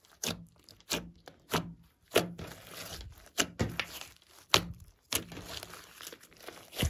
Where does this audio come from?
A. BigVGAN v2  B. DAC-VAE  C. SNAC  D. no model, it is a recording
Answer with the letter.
D